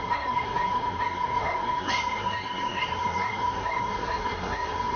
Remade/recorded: remade